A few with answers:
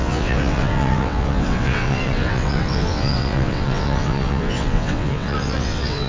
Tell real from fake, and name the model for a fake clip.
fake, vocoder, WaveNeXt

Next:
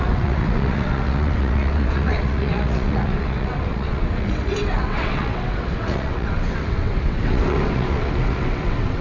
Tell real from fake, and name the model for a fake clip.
fake, vocoder, WaveNeXt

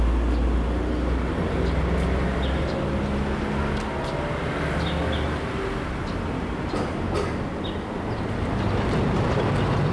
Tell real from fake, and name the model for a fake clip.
real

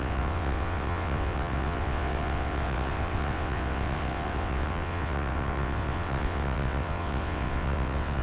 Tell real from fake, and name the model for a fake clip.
fake, vocoder, WaveNeXt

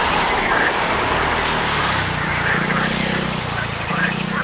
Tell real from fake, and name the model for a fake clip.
real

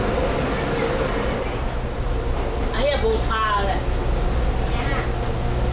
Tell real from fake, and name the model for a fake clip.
real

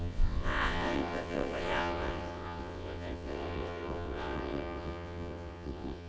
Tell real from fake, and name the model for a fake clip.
fake, vocoder, WaveNeXt